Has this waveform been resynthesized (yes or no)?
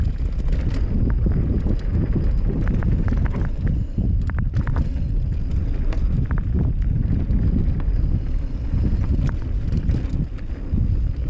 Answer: no